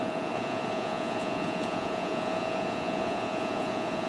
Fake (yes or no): yes